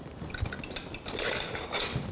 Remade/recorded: recorded